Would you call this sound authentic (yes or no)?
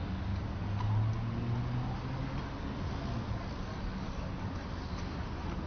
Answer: yes